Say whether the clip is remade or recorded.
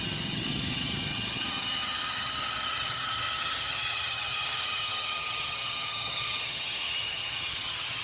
remade